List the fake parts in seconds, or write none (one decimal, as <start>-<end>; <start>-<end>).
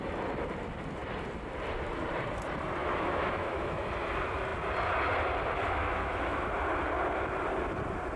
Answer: 2.8-3.9; 5.8-6.5